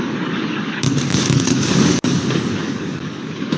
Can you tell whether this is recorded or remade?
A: remade